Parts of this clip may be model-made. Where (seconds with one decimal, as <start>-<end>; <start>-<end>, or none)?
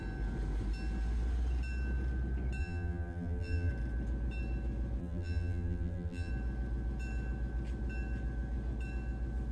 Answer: 2.6-3.7; 5.0-6.3